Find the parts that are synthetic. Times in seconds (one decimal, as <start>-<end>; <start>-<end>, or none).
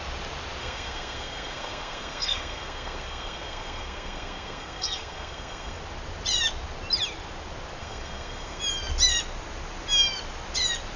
0.6-5.8; 7.8-8.6